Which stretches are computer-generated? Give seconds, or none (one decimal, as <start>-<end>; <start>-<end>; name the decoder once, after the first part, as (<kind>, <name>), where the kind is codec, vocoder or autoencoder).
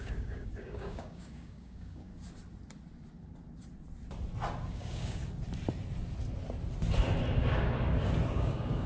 0.0-2.1 (codec, DAC); 4.7-5.2; 8.3-8.9